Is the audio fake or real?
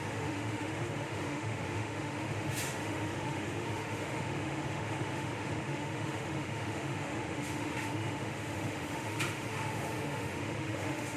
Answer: fake